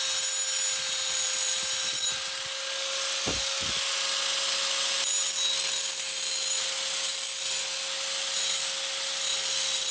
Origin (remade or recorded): recorded